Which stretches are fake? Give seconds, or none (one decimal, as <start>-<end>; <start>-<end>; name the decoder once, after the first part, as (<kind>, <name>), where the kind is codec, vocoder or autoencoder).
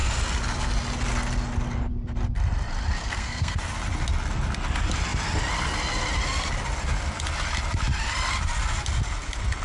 3.0-3.6 (codec, SNAC)